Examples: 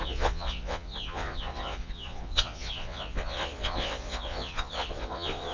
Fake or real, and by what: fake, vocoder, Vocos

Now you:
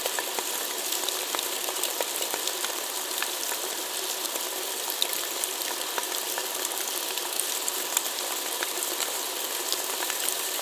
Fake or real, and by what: fake, vocoder, BigVGAN v2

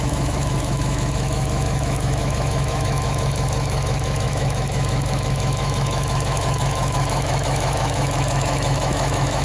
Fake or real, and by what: fake, autoencoder, DAC-VAE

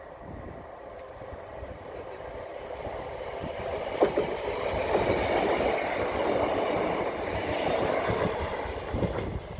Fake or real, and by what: real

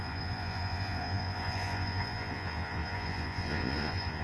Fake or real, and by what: fake, vocoder, Vocos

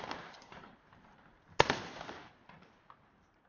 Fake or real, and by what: fake, vocoder, BigVGAN v2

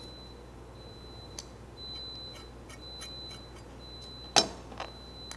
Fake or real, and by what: real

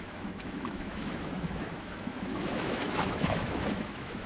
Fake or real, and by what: fake, autoencoder, DAC-VAE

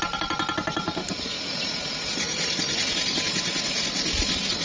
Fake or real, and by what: real